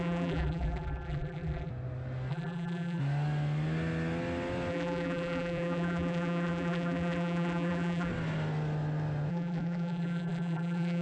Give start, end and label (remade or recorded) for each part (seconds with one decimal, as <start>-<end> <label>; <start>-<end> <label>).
0.0-1.7 remade; 1.7-2.3 recorded; 2.3-3.0 remade; 3.0-4.7 recorded; 4.7-8.1 remade; 8.1-9.3 recorded; 9.3-11.0 remade